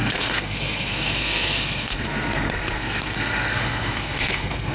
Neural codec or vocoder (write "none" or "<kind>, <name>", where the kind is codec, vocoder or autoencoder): codec, SNAC